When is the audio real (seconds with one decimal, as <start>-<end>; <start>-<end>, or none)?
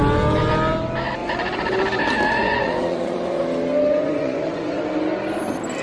0.0-1.2; 1.8-2.4; 3.4-3.9; 4.8-5.8